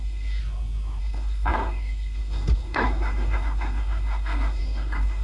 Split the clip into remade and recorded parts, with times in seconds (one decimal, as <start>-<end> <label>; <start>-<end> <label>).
0.0-0.4 remade; 0.4-1.0 recorded; 1.0-5.2 remade